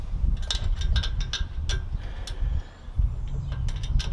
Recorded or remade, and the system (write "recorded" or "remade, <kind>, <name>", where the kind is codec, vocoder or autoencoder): recorded